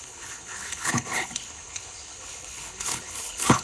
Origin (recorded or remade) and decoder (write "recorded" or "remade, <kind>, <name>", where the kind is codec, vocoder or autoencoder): remade, codec, HILCodec